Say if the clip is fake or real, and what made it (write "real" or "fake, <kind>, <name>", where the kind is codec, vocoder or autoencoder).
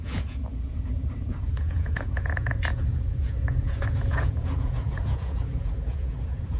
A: fake, vocoder, Vocos